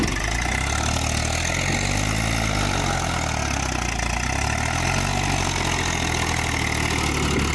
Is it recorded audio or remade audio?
recorded